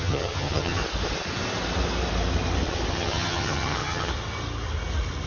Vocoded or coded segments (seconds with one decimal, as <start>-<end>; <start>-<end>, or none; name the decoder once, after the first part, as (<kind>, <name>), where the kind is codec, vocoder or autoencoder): 0.0-0.8 (vocoder, HiFi-GAN); 2.9-4.1